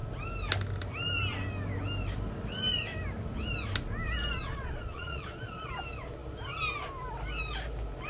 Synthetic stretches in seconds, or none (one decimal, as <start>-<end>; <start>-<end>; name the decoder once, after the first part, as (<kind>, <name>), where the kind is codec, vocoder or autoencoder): 4.5-5.7 (vocoder, Vocos)